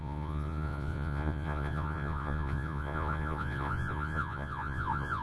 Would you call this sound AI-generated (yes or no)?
yes